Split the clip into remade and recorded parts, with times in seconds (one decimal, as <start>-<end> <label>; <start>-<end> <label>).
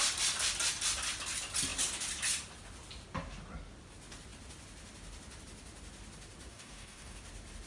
0.0-6.5 recorded; 6.5-7.2 remade; 7.2-7.7 recorded